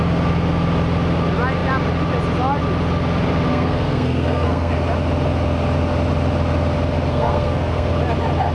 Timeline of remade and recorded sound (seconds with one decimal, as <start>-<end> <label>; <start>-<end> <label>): 0.0-3.5 recorded; 3.5-4.7 remade; 4.7-7.1 recorded; 7.1-7.9 remade; 7.9-8.5 recorded